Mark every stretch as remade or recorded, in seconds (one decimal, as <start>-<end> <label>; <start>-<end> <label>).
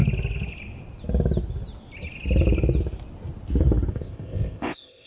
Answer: 0.0-3.9 recorded; 3.9-5.1 remade